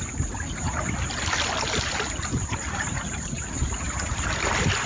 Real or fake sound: real